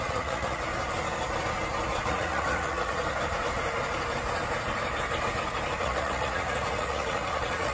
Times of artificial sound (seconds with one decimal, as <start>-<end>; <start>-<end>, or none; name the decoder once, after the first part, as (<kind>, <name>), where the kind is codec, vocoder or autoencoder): 0.0-0.7 (vocoder, Vocos); 2.1-3.0; 5.8-7.7